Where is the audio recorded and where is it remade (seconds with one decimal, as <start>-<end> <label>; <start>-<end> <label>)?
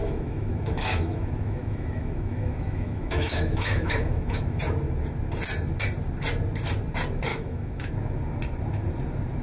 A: 0.0-4.6 remade; 4.6-7.3 recorded; 7.3-7.9 remade; 7.9-9.4 recorded